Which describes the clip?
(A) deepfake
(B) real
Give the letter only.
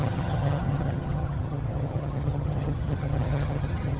A